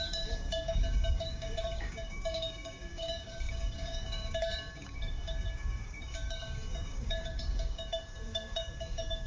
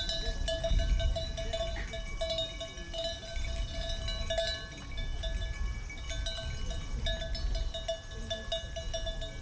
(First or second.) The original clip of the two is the second